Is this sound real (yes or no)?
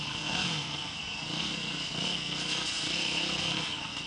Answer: no